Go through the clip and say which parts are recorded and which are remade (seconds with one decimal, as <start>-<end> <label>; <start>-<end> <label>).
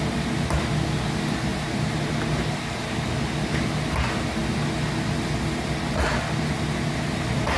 0.0-1.5 recorded; 1.5-3.3 remade; 3.3-7.6 recorded